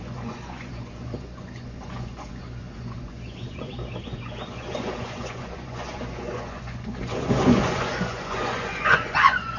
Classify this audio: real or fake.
fake